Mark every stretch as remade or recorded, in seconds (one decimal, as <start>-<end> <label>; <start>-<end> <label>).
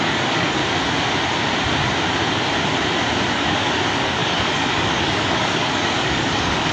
0.0-0.6 remade; 0.6-3.3 recorded; 3.3-6.7 remade